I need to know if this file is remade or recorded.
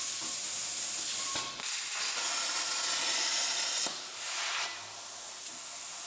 recorded